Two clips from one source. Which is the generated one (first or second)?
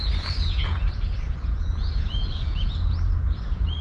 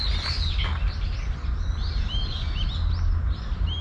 first